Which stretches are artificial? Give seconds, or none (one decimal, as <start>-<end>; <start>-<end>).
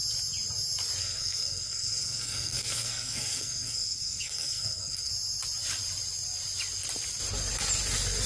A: 1.0-5.1